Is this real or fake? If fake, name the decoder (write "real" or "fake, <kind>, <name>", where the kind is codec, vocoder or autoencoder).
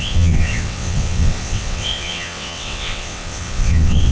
fake, vocoder, WaveNeXt